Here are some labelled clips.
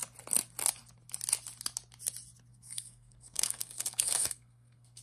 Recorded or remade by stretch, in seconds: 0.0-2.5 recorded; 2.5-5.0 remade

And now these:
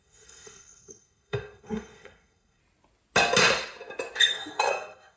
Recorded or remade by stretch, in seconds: 0.0-2.6 remade; 2.6-4.2 recorded; 4.2-5.2 remade